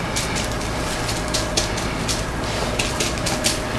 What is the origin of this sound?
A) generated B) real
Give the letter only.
B